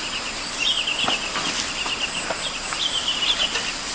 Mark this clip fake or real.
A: real